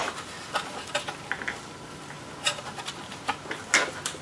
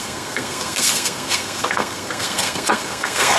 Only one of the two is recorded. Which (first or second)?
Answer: first